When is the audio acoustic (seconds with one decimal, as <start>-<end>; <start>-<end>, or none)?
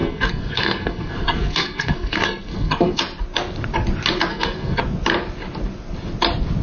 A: 3.0-4.3; 4.8-6.6